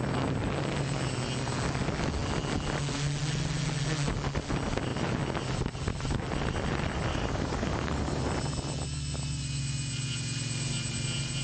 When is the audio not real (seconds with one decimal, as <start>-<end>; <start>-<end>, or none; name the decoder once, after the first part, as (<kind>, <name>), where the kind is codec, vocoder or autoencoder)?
7.1-8.2 (codec, DAC)